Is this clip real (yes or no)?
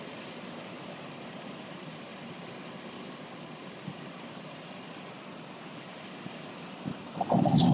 yes